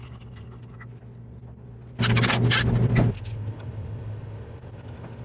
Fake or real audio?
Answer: real